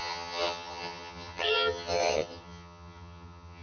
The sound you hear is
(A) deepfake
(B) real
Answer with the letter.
A